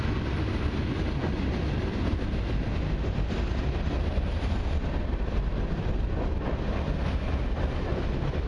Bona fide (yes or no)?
yes